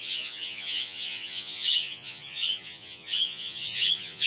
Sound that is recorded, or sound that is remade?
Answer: remade